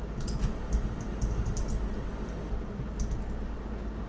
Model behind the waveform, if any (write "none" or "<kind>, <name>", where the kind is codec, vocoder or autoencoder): none